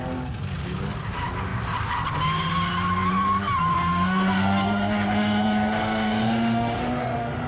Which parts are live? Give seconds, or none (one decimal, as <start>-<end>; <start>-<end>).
0.0-3.7